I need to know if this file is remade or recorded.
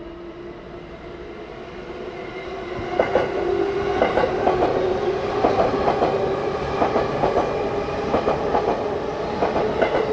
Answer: recorded